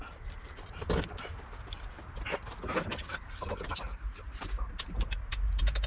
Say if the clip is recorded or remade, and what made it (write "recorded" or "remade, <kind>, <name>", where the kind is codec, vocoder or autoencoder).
recorded